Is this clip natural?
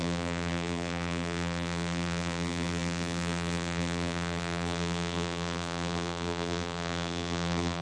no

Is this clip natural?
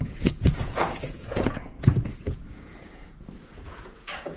no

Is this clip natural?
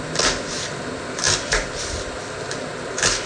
yes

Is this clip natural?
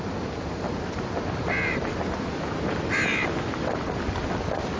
yes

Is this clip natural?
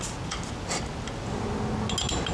yes